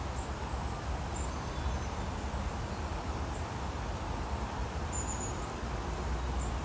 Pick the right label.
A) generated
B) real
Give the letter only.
B